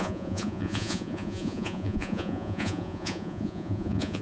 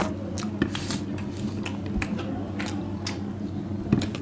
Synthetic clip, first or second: first